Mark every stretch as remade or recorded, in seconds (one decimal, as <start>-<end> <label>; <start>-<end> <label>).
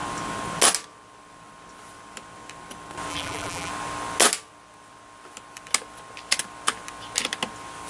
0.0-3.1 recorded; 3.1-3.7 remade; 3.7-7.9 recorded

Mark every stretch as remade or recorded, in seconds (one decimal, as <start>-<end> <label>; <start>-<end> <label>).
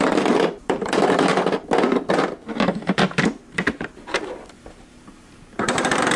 0.0-1.3 remade; 1.3-2.0 recorded; 2.0-2.5 remade; 2.5-3.4 recorded; 3.4-6.2 remade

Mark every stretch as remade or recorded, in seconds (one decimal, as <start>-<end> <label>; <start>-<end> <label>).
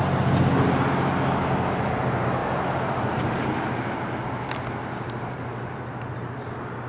0.0-6.9 recorded